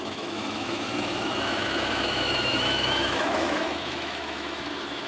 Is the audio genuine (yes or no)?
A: no